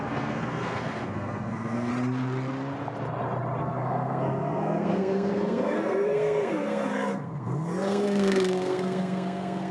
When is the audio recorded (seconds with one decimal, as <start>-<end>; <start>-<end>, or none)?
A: 1.9-3.6